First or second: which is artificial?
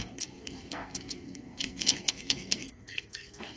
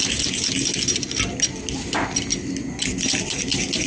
first